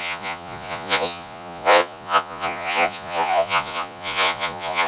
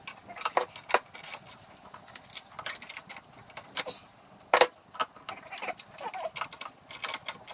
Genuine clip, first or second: second